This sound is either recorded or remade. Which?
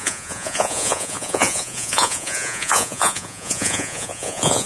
remade